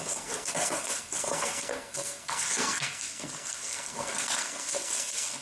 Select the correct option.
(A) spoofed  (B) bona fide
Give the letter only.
A